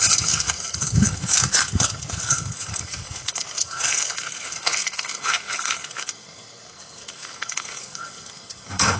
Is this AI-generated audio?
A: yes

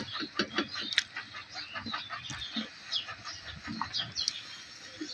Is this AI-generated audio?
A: no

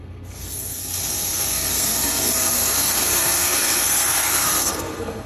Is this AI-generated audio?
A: yes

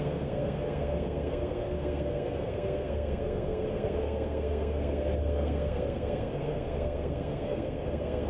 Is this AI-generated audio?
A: yes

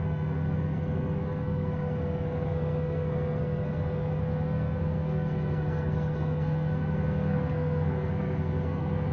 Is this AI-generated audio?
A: yes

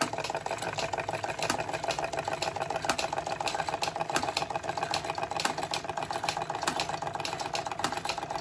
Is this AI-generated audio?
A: no